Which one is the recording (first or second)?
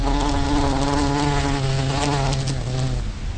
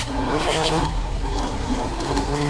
first